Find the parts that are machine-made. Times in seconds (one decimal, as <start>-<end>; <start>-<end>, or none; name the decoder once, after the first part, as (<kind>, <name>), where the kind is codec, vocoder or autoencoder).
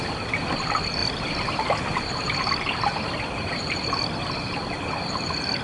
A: none